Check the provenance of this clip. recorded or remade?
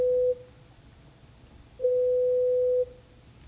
recorded